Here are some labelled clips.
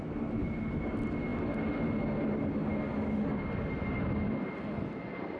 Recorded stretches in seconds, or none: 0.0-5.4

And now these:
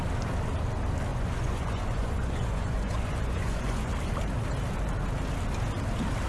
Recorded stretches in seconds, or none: 0.0-1.1; 3.9-6.3

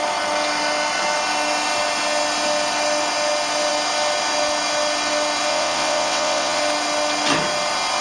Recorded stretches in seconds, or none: 0.0-5.5; 6.6-8.0

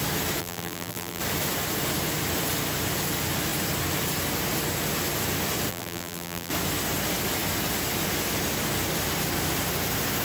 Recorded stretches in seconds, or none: 0.0-0.4; 1.2-5.7; 6.5-10.2

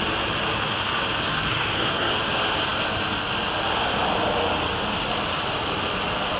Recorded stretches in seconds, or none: 0.0-1.5; 2.1-6.4

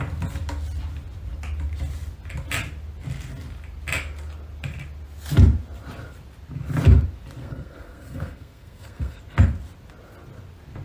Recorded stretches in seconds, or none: 0.0-7.4; 9.2-10.8

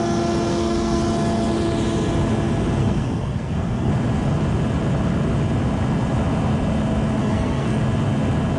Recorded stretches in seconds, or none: 0.0-0.5; 1.0-2.8; 3.9-7.2; 7.8-8.6

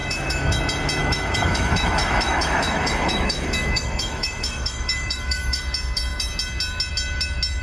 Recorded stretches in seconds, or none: 0.6-1.0; 5.6-7.6